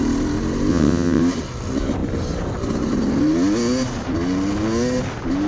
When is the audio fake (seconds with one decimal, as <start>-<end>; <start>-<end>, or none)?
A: 0.7-1.2